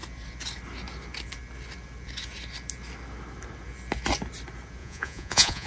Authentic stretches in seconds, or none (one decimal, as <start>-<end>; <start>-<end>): 0.0-4.8